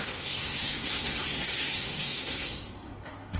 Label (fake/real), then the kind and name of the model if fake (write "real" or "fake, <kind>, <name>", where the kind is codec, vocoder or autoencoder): fake, codec, SNAC